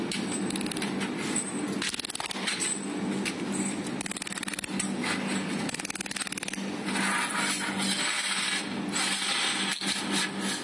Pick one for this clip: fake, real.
real